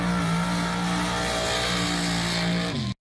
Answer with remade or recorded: recorded